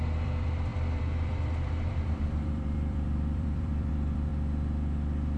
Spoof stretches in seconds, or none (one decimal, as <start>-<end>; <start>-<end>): 0.0-4.3